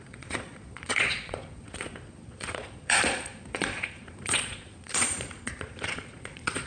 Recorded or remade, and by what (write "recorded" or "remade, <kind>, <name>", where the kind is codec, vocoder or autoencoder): remade, vocoder, Vocos